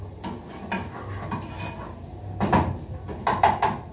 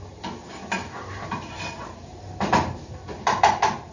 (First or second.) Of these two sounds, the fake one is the second